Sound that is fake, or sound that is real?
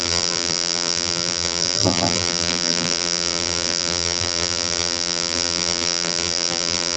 fake